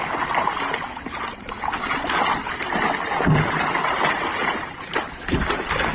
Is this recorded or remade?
recorded